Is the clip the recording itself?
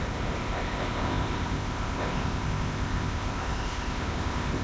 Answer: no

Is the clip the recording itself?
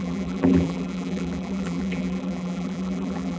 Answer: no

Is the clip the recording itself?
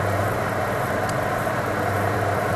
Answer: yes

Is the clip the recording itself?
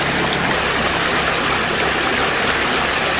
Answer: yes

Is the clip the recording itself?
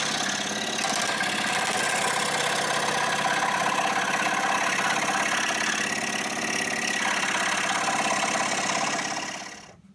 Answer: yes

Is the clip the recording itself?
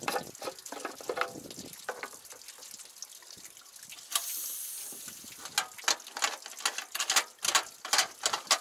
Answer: yes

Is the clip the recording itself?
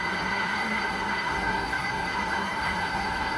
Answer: no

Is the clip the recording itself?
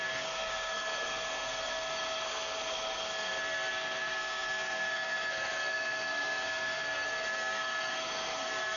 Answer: no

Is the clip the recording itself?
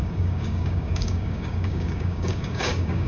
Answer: no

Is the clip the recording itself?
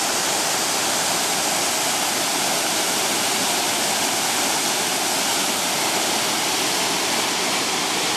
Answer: yes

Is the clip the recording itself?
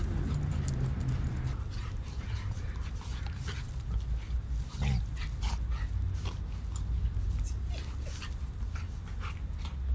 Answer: yes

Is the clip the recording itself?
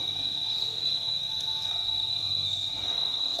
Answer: no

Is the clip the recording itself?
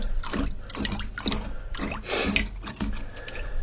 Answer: yes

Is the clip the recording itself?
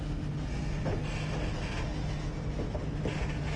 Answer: yes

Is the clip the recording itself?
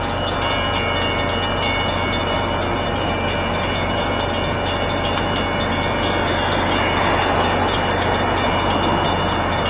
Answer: yes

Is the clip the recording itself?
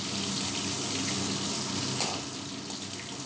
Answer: yes